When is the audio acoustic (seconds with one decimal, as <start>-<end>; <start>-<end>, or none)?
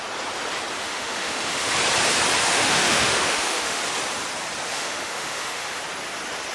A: 0.0-0.8; 1.7-2.4; 3.8-4.7; 5.8-6.5